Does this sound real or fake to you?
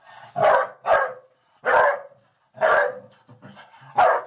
real